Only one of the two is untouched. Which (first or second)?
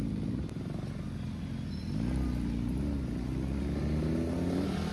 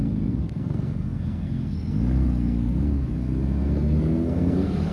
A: first